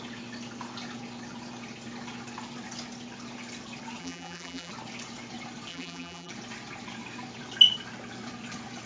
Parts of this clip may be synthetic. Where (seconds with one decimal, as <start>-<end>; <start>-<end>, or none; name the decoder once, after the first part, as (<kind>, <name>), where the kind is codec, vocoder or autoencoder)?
4.0-4.7 (vocoder, BigVGAN v2); 5.7-6.3